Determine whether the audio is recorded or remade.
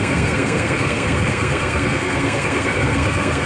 remade